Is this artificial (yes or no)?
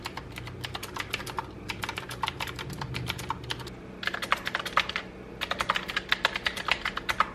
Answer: no